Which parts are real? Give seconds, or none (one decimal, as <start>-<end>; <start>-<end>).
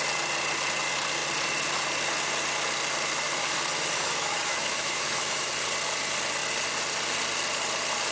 0.0-4.0; 5.5-8.1